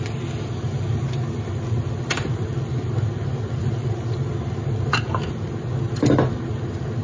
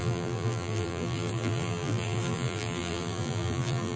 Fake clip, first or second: second